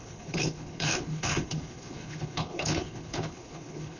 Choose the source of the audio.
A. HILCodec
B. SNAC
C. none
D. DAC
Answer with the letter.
A